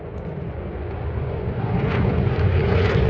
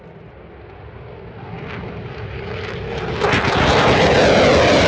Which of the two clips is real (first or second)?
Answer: second